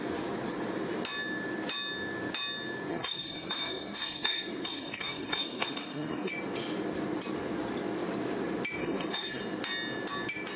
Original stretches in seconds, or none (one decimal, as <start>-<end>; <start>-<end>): 0.0-2.9; 6.3-8.8; 9.4-10.6